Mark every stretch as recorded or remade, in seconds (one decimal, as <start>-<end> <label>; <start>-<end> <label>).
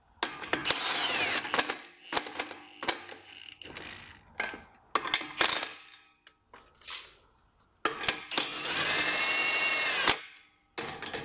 0.0-11.2 recorded